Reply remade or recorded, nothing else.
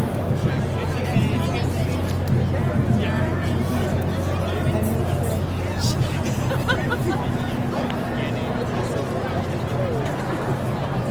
recorded